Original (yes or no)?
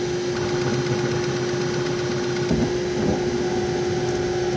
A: yes